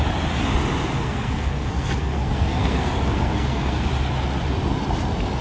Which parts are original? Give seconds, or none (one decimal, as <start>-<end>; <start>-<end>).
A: 0.0-1.0; 3.9-5.4